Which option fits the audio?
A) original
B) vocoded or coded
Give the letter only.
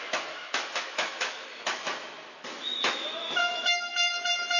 B